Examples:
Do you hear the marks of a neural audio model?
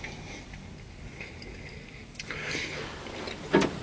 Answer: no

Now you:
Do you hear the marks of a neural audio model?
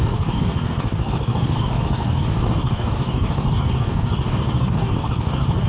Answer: yes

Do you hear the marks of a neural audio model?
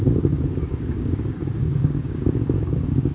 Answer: yes